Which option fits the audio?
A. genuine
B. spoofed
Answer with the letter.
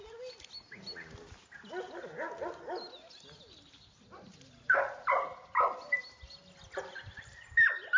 A